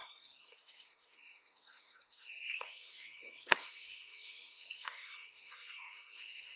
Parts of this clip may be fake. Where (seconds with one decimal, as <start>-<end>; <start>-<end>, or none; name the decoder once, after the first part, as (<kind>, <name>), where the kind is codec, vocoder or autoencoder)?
0.0-6.6 (codec, SNAC)

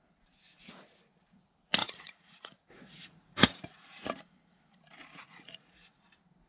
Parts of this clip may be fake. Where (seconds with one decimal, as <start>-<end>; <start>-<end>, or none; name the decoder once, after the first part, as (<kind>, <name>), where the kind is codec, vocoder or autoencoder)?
1.8-4.0 (vocoder, Vocos); 5.1-6.0

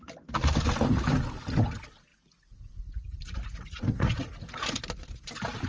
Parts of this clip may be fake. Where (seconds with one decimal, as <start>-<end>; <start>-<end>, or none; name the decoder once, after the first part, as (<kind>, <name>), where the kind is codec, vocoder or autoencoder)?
2.1-4.8 (vocoder, Vocos)

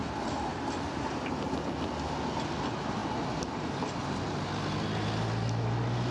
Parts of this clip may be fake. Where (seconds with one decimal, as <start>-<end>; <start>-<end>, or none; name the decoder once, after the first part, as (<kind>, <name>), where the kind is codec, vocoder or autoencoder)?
none

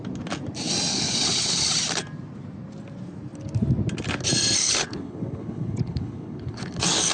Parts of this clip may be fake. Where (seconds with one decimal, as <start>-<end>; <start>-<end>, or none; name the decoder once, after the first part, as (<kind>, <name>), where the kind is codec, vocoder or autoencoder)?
0.9-1.7 (codec, HILCodec); 4.6-7.1

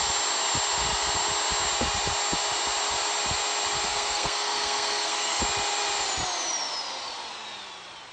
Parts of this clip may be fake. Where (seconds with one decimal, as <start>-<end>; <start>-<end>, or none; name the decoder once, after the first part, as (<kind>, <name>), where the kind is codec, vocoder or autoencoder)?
3.9-5.4 (codec, SNAC)

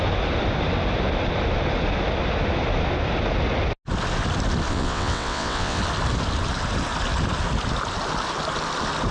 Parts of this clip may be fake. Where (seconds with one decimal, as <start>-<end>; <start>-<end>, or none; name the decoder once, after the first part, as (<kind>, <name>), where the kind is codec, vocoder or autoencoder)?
4.7-5.8 (vocoder, WaveNeXt)

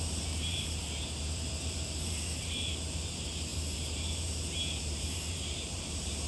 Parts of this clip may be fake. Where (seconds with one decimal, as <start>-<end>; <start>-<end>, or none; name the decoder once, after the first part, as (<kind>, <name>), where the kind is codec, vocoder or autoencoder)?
0.0-6.3 (vocoder, BigVGAN v2)